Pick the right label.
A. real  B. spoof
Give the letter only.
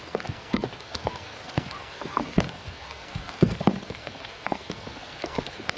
B